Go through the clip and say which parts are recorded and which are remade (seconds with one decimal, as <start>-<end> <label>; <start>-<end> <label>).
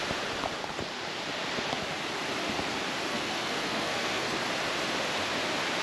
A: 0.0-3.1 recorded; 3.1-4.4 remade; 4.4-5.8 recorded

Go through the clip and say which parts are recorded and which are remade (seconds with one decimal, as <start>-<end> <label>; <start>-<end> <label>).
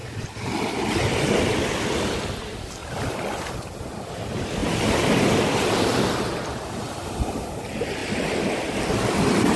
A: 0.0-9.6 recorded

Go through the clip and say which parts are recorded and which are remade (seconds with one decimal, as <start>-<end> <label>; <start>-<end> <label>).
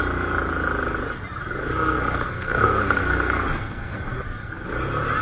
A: 0.0-1.6 recorded; 1.6-4.7 remade; 4.7-5.2 recorded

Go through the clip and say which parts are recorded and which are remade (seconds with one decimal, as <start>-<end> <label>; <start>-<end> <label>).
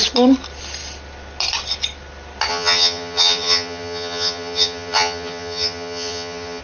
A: 0.0-2.5 recorded; 2.5-6.6 remade